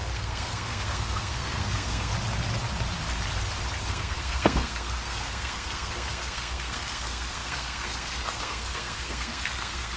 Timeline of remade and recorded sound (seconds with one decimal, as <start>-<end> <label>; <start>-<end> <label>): 0.0-2.1 remade; 2.1-3.9 recorded; 3.9-10.0 remade